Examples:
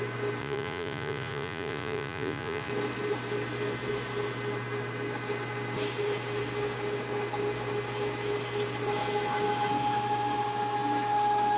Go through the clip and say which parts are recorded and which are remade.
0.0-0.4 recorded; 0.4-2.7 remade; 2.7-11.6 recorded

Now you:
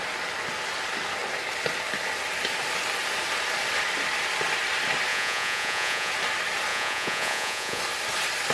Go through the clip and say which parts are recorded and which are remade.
0.0-5.1 recorded; 5.1-6.1 remade; 6.1-6.7 recorded; 6.7-7.8 remade; 7.8-8.5 recorded